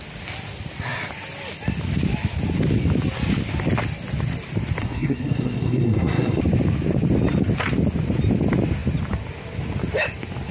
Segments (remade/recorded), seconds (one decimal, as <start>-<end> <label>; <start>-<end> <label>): 0.0-4.8 recorded; 4.8-6.4 remade; 6.4-10.5 recorded